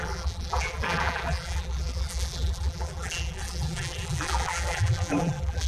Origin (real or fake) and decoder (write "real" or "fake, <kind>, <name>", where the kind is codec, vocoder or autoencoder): fake, vocoder, BigVGAN v2